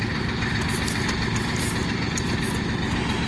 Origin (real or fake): real